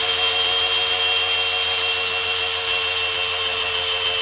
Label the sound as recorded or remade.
recorded